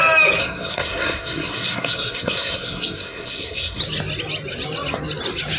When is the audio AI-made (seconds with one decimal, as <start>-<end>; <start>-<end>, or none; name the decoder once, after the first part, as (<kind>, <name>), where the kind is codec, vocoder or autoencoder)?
0.4-3.8 (codec, SNAC)